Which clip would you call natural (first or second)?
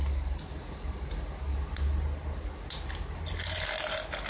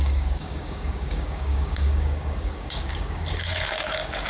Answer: first